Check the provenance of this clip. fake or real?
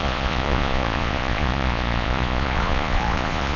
fake